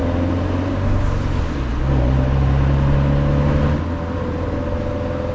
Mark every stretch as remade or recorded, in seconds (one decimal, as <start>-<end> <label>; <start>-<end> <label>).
0.0-5.3 recorded